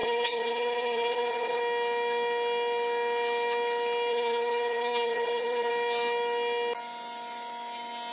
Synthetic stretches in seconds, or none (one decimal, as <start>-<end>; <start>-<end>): 0.0-1.6; 4.1-5.7